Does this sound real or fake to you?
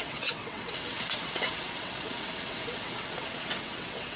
fake